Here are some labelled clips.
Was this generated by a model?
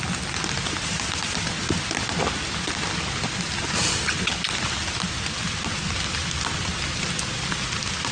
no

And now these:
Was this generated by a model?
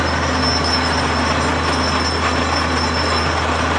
no